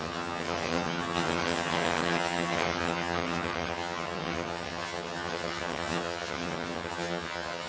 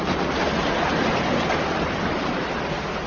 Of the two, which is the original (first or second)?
second